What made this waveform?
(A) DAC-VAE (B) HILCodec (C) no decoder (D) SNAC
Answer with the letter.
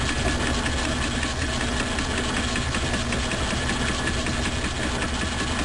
C